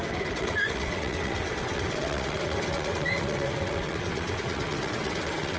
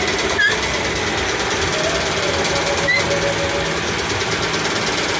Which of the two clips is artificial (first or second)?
first